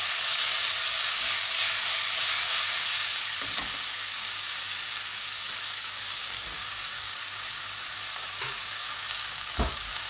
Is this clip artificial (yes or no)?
yes